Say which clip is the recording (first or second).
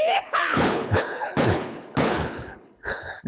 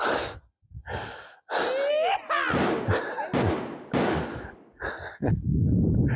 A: second